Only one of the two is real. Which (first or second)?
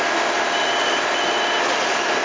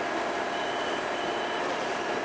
first